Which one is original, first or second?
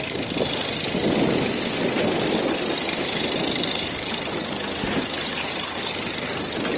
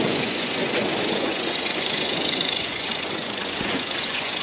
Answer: first